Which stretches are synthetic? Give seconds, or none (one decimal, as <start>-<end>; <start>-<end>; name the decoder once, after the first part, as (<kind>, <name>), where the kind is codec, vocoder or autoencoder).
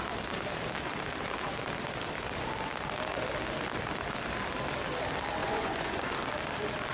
5.4-6.1 (vocoder, Vocos)